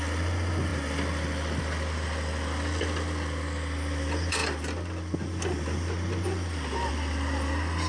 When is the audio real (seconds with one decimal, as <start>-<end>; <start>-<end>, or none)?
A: 0.0-7.9